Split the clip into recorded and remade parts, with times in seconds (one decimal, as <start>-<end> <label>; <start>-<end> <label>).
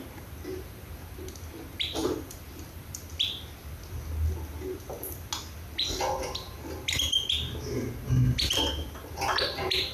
0.0-2.0 recorded; 2.0-3.1 remade; 3.1-9.9 recorded